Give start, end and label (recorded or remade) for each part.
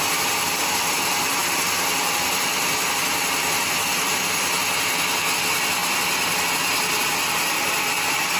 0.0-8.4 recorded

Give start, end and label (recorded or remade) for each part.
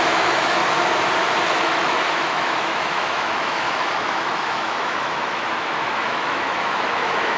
0.0-0.6 remade; 0.6-1.6 recorded; 1.6-7.4 remade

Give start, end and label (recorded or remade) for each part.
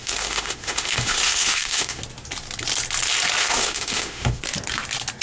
0.0-2.0 remade; 2.0-3.4 recorded; 3.4-4.4 remade; 4.4-5.2 recorded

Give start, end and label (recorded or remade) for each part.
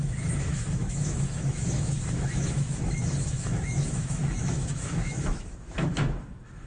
0.0-6.7 remade